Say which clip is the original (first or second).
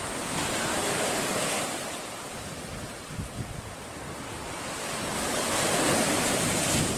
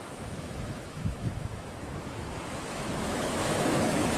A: first